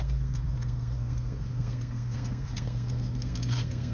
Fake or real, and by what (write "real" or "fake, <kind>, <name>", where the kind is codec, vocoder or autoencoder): fake, codec, SNAC